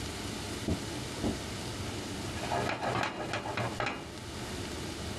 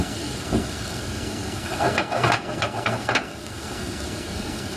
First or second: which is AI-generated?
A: second